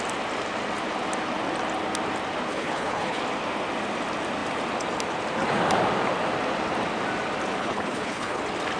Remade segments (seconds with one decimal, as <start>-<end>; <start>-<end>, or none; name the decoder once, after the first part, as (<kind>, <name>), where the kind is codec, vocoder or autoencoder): 2.5-3.2 (codec, HILCodec); 7.6-8.4